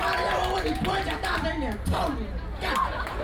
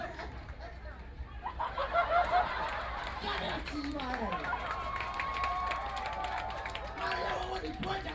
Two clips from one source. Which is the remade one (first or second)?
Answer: first